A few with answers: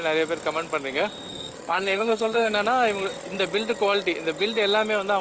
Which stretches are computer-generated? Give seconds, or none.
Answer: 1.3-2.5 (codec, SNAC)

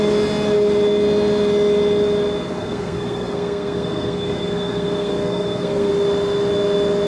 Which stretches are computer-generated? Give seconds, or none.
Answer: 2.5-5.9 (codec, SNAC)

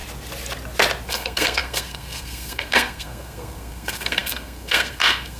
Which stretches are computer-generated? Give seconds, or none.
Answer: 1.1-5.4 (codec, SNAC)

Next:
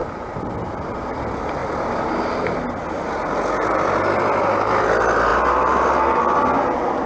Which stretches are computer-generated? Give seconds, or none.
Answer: none

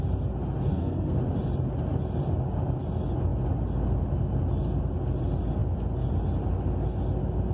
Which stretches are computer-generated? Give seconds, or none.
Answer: 0.7-1.2 (codec, SNAC)

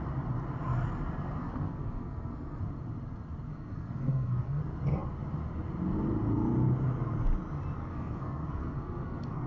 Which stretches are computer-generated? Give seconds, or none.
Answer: 1.4-2.6 (codec, SNAC); 3.5-4.6; 7.8-9.5

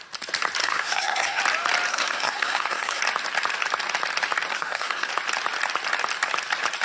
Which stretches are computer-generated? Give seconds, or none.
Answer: 0.6-1.4 (codec, SNAC); 1.9-3.0; 4.5-5.1

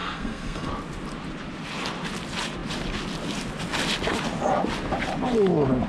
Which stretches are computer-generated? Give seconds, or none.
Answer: 0.0-0.7 (codec, SNAC)